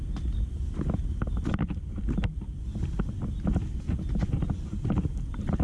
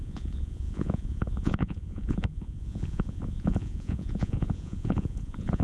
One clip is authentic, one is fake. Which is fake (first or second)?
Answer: second